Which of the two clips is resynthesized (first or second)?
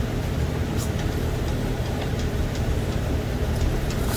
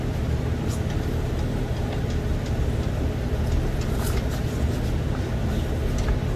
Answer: first